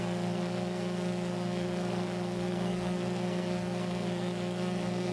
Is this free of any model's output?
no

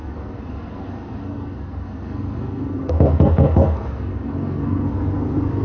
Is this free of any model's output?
no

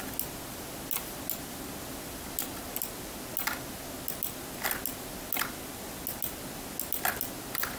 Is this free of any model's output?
yes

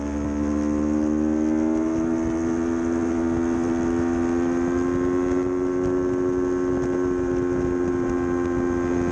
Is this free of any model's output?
yes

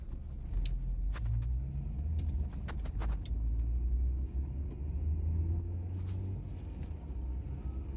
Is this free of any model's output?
yes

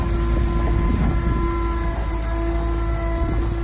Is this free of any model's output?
yes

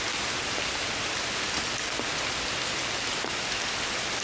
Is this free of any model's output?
yes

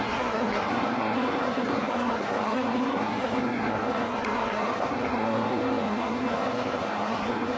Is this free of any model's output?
no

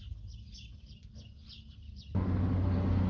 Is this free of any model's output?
yes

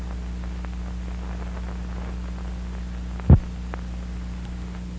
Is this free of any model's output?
yes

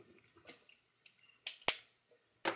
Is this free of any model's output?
yes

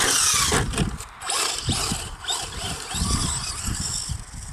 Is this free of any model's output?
yes